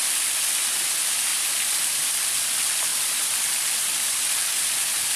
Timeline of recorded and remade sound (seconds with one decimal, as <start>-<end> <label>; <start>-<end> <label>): 0.0-1.3 recorded; 1.3-2.0 remade; 2.0-2.9 recorded; 2.9-3.4 remade; 3.4-5.2 recorded